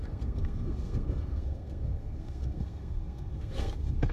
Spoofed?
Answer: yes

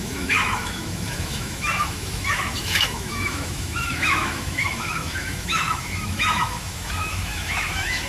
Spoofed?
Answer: yes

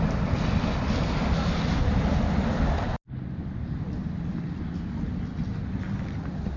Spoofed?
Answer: no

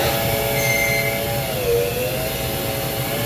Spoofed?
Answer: no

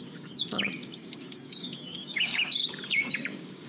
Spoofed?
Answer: yes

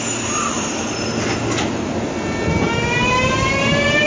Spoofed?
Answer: no